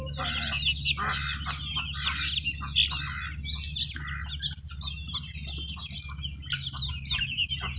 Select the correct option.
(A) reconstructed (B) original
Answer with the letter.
B